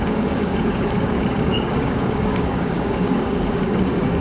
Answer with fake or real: fake